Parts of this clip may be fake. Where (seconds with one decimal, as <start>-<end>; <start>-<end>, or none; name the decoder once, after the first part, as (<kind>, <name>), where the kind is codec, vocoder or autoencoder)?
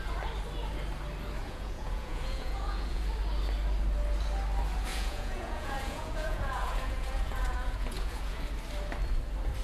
1.4-3.0 (vocoder, Vocos); 4.9-8.4